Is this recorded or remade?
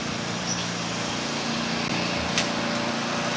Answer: recorded